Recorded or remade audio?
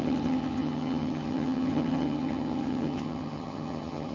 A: remade